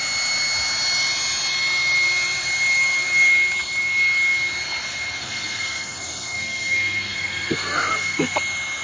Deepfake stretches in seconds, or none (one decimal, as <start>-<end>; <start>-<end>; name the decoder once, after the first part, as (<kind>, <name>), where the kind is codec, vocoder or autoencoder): 5.2-8.4 (codec, SNAC)